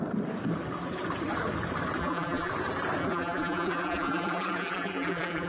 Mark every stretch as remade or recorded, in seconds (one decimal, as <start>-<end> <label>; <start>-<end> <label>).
0.0-2.0 recorded; 2.0-2.5 remade; 2.5-3.0 recorded; 3.0-5.5 remade